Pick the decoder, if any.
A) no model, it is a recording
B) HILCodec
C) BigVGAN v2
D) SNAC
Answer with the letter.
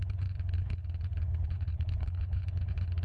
B